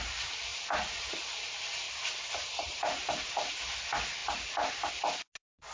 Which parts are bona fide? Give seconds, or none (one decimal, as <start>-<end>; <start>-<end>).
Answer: 0.0-5.7